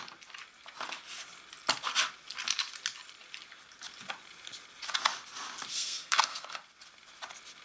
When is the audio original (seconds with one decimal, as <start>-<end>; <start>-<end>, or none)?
0.0-5.7; 6.6-7.6